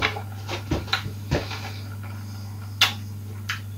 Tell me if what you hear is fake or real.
real